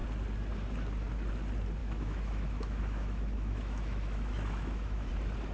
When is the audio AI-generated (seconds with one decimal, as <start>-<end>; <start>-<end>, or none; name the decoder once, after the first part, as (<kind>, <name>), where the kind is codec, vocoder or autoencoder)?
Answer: 1.8-5.1 (autoencoder, DAC-VAE)